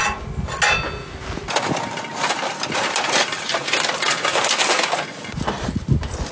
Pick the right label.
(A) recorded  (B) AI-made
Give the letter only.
A